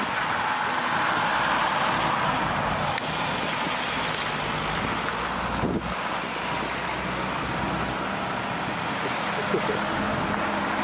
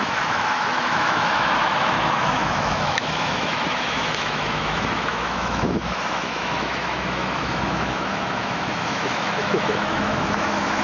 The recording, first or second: first